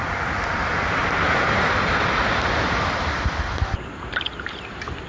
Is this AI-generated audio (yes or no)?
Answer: yes